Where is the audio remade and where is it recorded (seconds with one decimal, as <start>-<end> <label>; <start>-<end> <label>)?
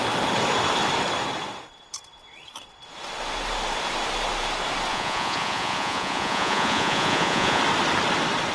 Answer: 0.0-4.9 recorded; 4.9-7.6 remade; 7.6-8.5 recorded